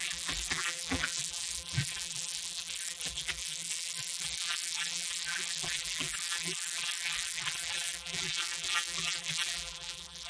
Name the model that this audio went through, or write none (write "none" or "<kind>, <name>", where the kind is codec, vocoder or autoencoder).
vocoder, BigVGAN v2